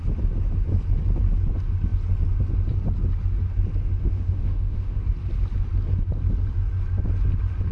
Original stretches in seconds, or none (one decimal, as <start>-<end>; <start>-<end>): 0.0-4.0; 5.0-7.7